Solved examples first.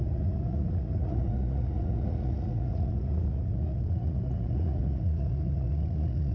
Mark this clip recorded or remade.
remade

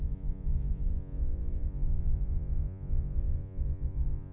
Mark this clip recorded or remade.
remade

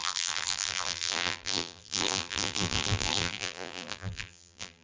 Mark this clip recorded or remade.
remade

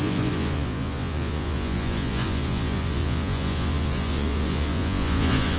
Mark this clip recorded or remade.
remade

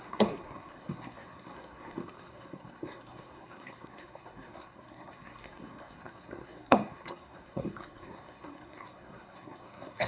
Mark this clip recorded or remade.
remade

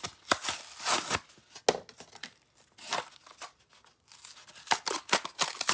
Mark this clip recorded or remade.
recorded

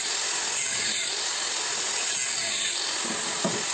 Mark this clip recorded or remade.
recorded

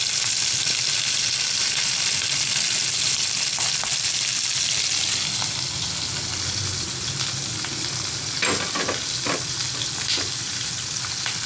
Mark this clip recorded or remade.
recorded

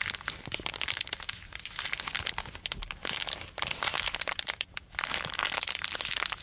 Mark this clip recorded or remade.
recorded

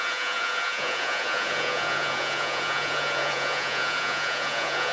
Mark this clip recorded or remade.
remade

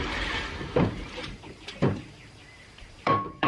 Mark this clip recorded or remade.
remade